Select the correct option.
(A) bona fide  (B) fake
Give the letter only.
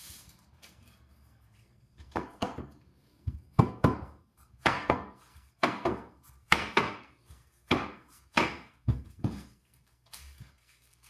B